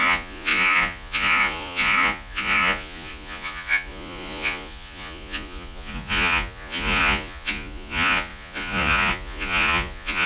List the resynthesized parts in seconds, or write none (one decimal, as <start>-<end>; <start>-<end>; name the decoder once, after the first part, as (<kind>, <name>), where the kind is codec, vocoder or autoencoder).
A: 0.0-10.3 (vocoder, Vocos)